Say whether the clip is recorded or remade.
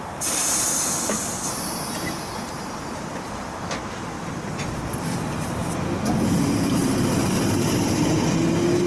recorded